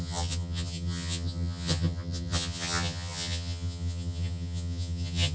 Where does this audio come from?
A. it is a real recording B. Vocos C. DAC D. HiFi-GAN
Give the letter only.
D